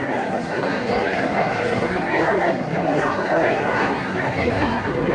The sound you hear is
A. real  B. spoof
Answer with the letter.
B